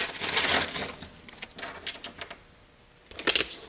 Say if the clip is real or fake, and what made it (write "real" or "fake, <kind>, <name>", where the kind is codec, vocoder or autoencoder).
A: real